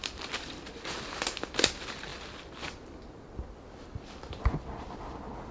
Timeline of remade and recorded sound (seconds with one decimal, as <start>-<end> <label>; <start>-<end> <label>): 0.0-5.5 recorded